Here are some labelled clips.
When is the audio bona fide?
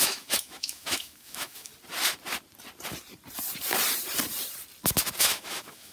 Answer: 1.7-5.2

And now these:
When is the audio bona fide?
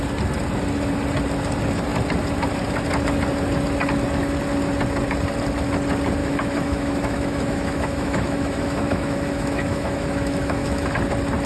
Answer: 0.0-6.2; 10.9-11.5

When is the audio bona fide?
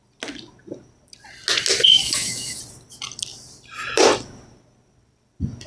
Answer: 0.0-2.0; 2.6-5.7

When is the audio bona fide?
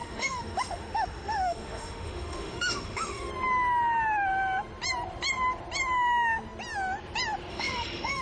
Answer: 3.3-7.5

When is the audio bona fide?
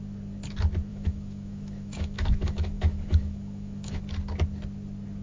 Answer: 0.0-0.9; 4.0-5.2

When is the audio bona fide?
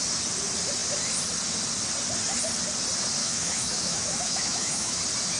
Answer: 0.0-3.2; 5.0-5.4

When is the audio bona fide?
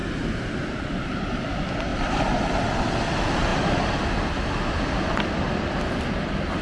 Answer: 0.0-6.6